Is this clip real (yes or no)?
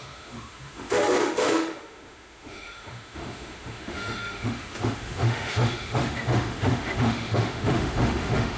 no